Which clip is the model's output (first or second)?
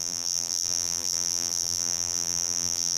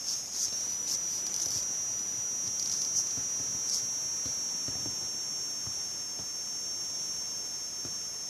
first